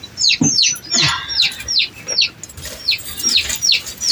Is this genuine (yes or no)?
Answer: yes